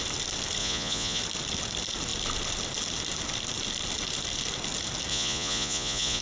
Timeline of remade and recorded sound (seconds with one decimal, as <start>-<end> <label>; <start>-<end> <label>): 0.0-0.6 recorded; 0.6-1.2 remade; 1.2-5.1 recorded; 5.1-6.2 remade